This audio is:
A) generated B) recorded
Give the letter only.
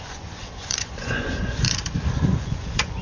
A